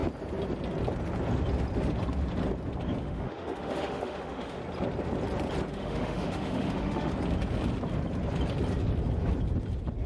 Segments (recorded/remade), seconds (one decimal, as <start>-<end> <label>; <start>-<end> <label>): 0.0-3.0 recorded; 3.0-4.6 remade; 4.6-5.7 recorded; 5.7-7.1 remade; 7.1-10.1 recorded